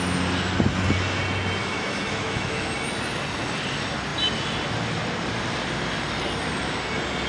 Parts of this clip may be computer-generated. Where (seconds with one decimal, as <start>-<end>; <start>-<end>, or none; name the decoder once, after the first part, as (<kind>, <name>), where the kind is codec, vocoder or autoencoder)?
1.6-2.7 (autoencoder, DAC-VAE)